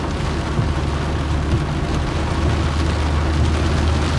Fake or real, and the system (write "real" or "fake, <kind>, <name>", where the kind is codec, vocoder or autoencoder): real